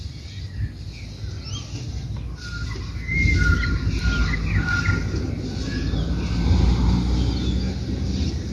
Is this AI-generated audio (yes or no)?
no